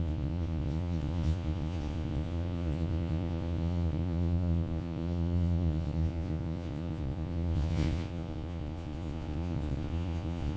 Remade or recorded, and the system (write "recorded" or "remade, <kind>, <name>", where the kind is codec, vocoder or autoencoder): remade, vocoder, Vocos